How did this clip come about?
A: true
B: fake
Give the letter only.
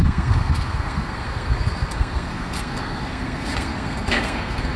B